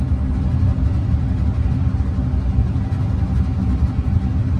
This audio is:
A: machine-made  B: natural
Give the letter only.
B